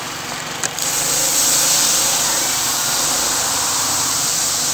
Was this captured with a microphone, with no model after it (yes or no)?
yes